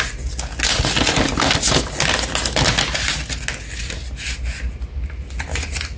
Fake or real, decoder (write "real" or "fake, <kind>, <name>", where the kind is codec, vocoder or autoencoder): real